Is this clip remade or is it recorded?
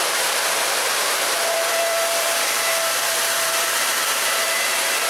remade